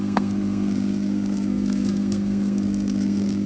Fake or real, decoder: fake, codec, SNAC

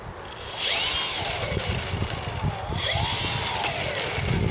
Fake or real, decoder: real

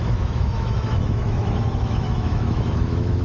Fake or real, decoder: fake, autoencoder, DAC-VAE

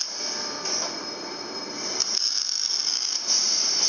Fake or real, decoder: real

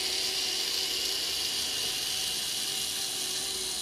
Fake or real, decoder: real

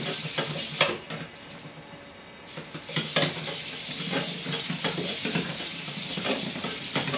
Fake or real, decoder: real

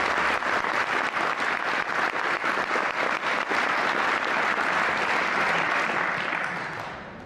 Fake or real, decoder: real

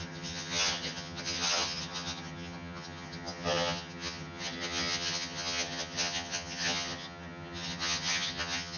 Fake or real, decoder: fake, vocoder, HiFi-GAN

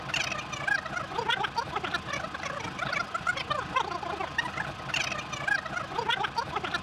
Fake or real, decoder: real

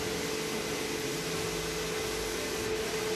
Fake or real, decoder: real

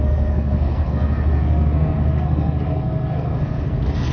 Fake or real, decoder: fake, codec, SNAC